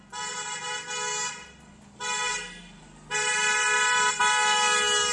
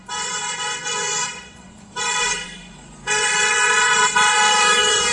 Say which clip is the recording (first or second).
first